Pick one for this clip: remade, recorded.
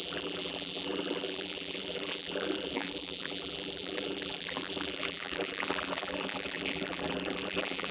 remade